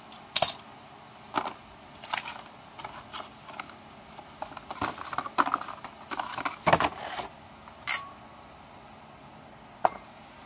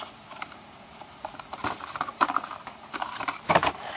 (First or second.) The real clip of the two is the first